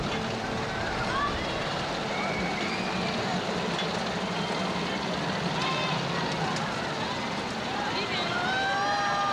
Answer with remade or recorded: recorded